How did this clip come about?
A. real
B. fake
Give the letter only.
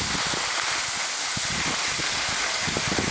A